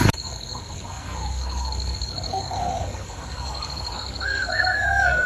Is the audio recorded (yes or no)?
no